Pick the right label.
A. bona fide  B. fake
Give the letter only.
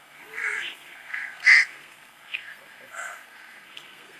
B